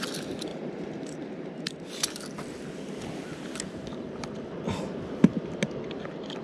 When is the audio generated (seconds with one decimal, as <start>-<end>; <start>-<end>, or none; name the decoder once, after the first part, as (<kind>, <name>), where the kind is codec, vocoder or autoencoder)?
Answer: 0.5-1.9 (vocoder, BigVGAN v2)